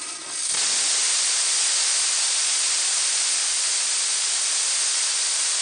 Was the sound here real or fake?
real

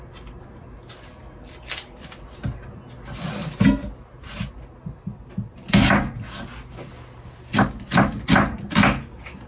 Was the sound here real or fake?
real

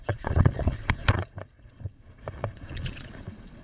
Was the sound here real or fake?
fake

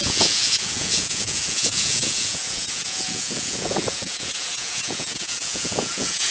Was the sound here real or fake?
fake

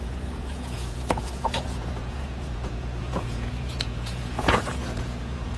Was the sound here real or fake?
fake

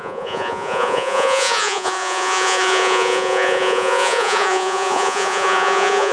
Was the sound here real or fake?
fake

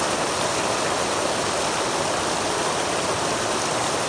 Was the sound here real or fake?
real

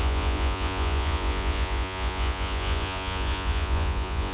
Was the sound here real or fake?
fake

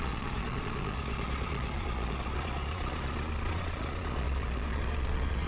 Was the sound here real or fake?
fake